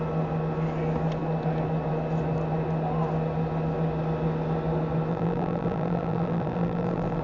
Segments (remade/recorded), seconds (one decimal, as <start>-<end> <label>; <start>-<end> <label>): 0.0-5.1 recorded; 5.1-7.2 remade